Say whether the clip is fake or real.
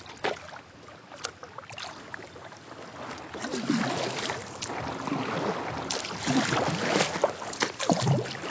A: real